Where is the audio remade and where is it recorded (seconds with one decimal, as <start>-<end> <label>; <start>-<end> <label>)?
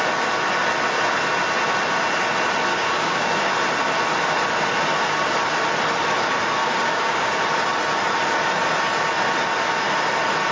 0.0-2.7 recorded; 2.7-3.5 remade; 3.5-6.6 recorded; 6.6-7.4 remade; 7.4-10.5 recorded